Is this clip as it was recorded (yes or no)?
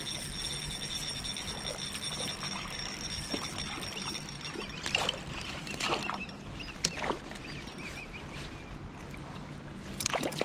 yes